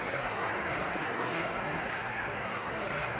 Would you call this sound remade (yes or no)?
yes